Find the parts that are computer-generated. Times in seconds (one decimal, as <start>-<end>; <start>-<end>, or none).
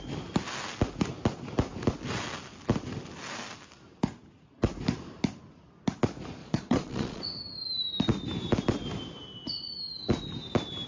6.4-7.2